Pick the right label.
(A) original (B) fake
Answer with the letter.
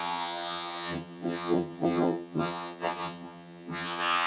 B